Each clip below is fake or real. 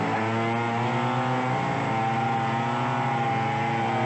real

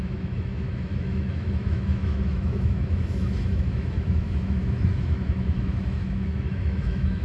fake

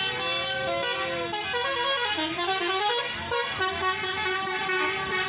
real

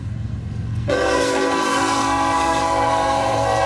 fake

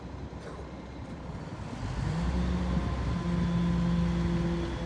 real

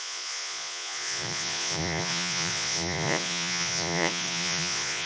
fake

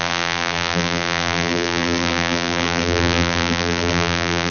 fake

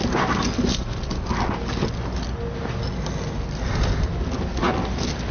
real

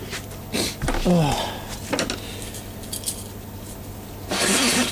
real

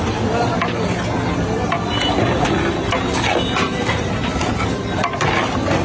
real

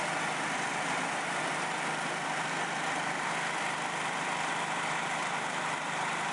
fake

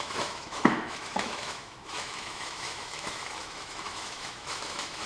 fake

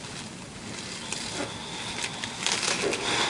real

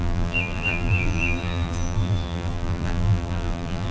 fake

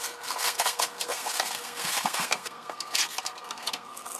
fake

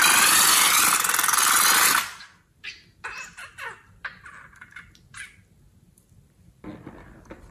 real